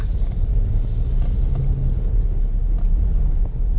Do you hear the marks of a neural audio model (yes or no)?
no